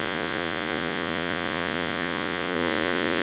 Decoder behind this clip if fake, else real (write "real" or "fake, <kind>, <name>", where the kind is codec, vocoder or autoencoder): fake, vocoder, Vocos